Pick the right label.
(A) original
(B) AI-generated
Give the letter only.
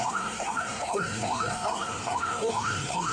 B